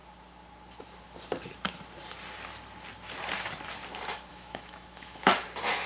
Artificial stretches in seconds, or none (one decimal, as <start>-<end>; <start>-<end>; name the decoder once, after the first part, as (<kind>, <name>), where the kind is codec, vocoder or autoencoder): 4.3-5.3 (autoencoder, DAC-VAE)